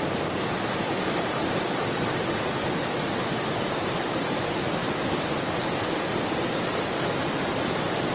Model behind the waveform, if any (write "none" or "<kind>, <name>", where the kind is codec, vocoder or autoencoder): none